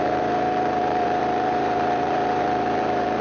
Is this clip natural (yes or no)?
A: no